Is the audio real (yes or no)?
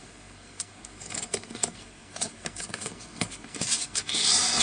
no